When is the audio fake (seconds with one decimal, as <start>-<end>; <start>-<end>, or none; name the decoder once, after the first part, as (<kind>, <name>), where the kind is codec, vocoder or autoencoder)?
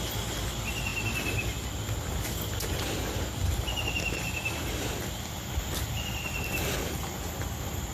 none